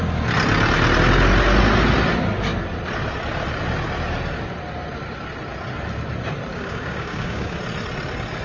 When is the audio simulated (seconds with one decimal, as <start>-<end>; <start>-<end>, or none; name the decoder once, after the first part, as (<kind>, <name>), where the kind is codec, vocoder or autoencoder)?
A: 6.5-7.6 (codec, DAC)